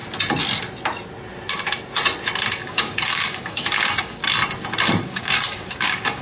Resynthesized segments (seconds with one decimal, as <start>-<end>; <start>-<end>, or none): 2.6-4.2; 5.0-6.2